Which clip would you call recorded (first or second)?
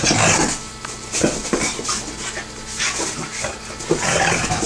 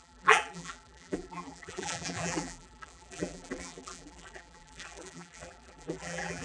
first